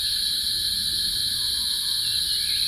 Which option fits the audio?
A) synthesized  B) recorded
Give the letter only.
B